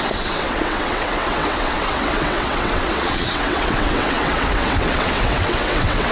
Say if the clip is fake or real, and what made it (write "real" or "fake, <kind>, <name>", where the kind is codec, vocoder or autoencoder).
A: fake, vocoder, WaveNeXt